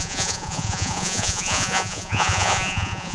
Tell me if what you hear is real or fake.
fake